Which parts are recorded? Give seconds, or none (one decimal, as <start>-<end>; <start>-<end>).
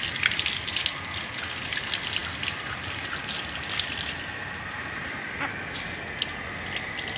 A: 0.0-7.2